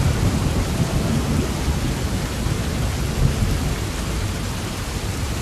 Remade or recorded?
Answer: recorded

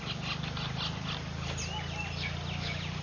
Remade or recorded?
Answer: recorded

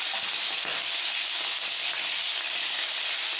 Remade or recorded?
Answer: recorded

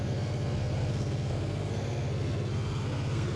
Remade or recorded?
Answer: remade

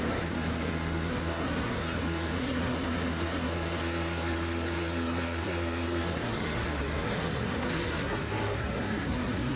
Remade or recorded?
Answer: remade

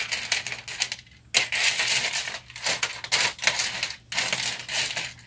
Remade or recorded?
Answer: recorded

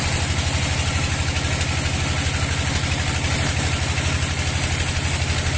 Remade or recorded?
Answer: recorded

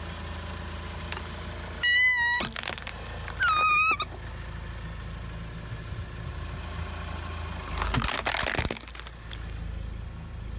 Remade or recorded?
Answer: recorded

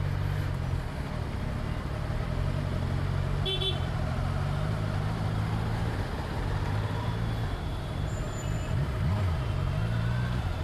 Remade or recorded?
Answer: recorded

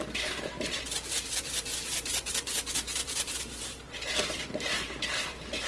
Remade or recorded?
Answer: remade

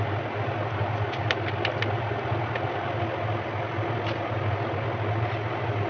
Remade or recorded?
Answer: recorded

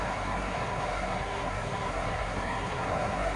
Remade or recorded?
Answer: remade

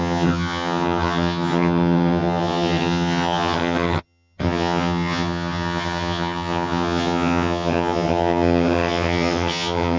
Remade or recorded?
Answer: remade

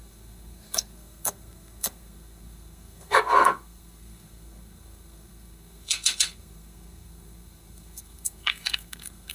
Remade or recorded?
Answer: remade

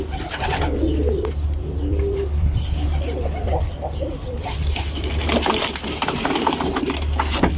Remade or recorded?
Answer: remade